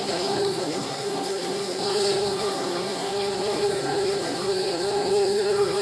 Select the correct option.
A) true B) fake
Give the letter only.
B